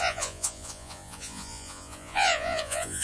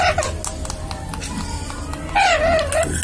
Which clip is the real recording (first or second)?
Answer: second